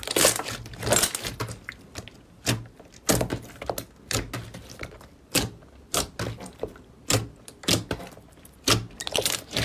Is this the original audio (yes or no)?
yes